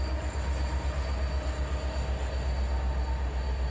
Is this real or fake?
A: real